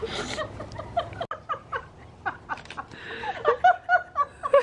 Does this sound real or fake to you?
real